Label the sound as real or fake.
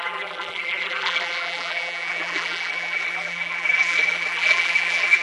fake